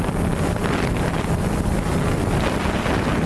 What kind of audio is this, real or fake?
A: real